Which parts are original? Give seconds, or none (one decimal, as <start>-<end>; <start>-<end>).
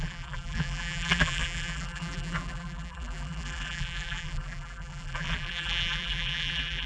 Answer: none